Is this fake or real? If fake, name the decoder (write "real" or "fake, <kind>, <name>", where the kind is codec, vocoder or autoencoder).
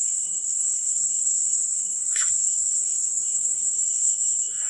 fake, codec, SNAC